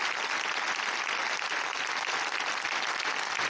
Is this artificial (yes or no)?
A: no